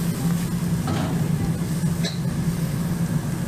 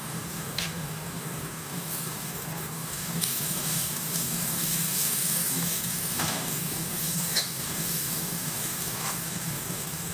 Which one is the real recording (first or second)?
first